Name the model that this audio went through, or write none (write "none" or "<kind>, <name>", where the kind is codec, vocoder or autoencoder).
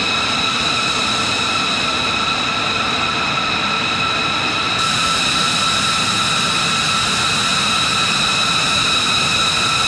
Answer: none